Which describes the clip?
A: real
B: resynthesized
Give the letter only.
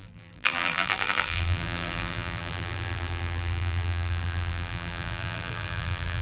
B